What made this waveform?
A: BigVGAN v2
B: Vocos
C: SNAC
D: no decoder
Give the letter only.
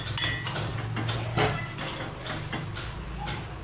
D